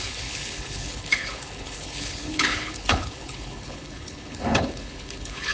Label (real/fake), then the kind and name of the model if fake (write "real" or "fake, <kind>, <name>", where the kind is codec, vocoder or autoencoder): fake, codec, HILCodec